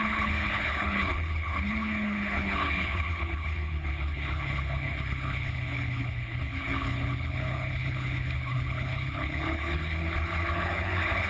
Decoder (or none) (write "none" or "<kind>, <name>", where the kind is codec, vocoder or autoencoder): codec, HILCodec